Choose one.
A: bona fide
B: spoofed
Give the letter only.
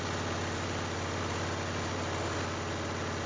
A